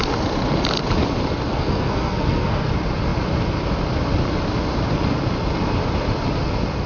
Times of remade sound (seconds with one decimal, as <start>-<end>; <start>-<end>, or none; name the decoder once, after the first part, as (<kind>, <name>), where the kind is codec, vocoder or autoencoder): 1.5-2.7 (codec, SNAC)

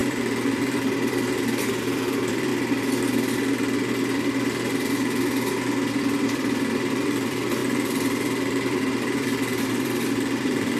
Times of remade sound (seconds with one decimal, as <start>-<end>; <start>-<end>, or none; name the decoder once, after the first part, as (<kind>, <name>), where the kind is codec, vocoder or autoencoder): 0.0-2.5 (vocoder, BigVGAN v2); 5.9-10.8

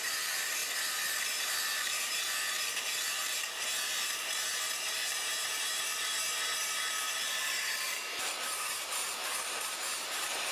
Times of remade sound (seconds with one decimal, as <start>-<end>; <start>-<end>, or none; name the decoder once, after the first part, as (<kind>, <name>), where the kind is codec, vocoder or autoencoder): 0.0-0.6 (vocoder, BigVGAN v2); 1.3-10.5

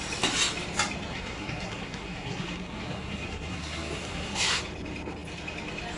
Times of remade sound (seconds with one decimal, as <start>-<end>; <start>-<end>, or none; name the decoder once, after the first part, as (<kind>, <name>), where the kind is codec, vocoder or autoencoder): 1.1-4.6 (codec, SNAC)